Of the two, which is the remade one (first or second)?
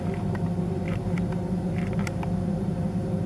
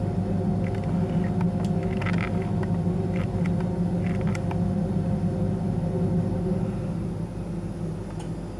first